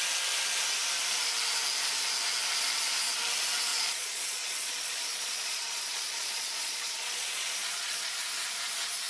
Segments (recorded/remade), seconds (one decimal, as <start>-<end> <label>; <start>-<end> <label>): 0.0-3.7 recorded; 3.7-8.1 remade; 8.1-9.1 recorded